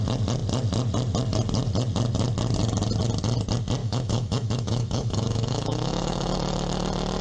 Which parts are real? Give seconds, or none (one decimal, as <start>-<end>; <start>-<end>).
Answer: 0.0-3.8; 6.3-7.2